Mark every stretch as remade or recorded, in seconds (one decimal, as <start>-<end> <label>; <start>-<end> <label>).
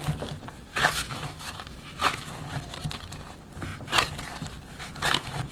0.0-0.7 recorded; 0.7-2.3 remade; 2.3-4.7 recorded; 4.7-5.5 remade